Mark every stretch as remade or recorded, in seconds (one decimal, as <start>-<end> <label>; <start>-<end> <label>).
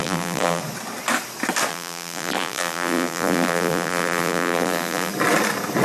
0.0-0.6 remade; 0.6-1.7 recorded; 1.7-5.1 remade; 5.1-5.8 recorded